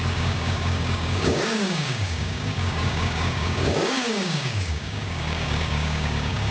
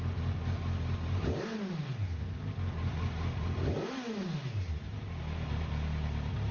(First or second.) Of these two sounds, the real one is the second